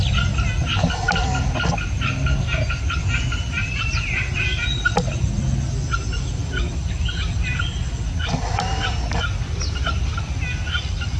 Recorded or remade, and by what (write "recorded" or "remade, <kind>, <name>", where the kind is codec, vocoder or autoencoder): recorded